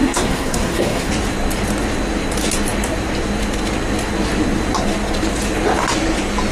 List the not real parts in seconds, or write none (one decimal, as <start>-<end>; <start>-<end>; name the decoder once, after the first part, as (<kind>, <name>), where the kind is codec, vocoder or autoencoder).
0.0-1.1 (codec, SNAC)